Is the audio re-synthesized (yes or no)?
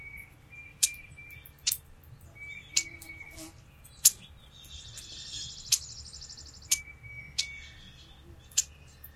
no